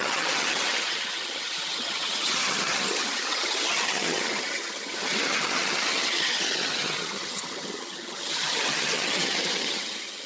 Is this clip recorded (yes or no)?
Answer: no